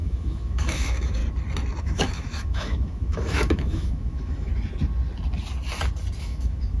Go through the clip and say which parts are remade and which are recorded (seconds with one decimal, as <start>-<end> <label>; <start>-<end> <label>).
0.0-1.2 remade; 1.2-1.8 recorded; 1.8-4.5 remade; 4.5-6.2 recorded; 6.2-6.8 remade